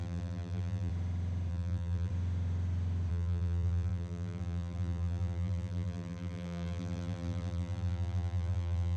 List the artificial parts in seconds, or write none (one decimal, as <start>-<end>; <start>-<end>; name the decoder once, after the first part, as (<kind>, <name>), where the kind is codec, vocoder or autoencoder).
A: 0.0-0.9 (vocoder, BigVGAN v2); 1.5-2.1; 3.1-9.0

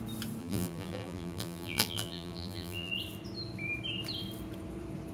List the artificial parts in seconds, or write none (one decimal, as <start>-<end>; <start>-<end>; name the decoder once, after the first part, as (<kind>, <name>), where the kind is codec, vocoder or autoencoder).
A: 0.4-2.9 (vocoder, BigVGAN v2)

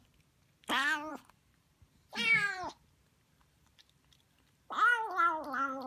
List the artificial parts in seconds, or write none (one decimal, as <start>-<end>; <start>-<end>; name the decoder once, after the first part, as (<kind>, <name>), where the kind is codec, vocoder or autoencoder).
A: 1.1-4.6 (vocoder, BigVGAN v2)

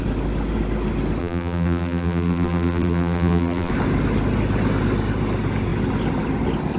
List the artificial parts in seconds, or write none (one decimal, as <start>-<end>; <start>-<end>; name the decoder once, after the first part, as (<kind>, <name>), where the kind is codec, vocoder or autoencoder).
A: 1.2-3.7 (vocoder, BigVGAN v2)

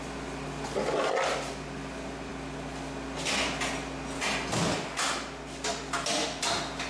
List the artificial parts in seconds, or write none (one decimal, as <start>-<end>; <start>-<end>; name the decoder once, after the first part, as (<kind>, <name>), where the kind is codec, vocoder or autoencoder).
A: none

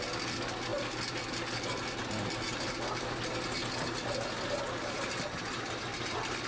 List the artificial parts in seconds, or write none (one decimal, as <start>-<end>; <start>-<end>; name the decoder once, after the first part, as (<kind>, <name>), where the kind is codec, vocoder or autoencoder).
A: 5.9-6.5 (vocoder, BigVGAN v2)

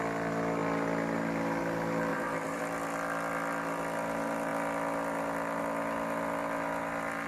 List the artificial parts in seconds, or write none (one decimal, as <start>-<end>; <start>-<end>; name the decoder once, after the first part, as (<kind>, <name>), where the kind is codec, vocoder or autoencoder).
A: 2.1-2.6 (vocoder, BigVGAN v2)

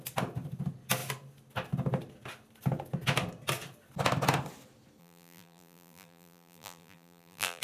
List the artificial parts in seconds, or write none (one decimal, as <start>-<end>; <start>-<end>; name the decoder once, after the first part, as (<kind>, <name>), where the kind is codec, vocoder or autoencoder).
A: 5.0-7.6 (vocoder, BigVGAN v2)